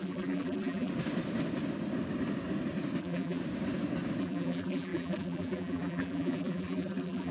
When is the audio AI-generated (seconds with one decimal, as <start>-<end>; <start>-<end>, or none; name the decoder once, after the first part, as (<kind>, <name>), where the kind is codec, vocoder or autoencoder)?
0.0-0.9 (vocoder, BigVGAN v2); 3.0-3.4; 4.2-7.3